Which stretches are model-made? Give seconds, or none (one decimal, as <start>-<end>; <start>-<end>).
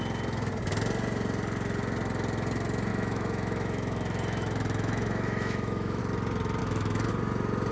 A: 2.9-6.0; 6.6-7.1